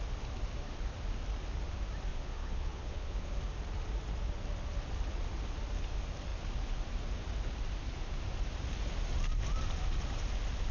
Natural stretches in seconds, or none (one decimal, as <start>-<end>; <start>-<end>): 0.0-2.1; 3.3-10.7